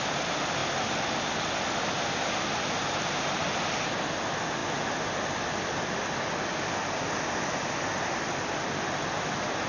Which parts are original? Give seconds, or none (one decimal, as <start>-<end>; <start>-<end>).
0.0-9.7